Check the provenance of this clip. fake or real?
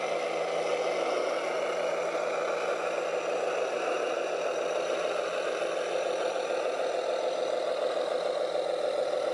real